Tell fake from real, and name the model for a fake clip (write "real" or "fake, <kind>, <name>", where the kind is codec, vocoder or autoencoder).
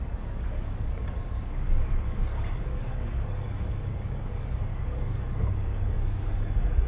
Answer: fake, codec, DAC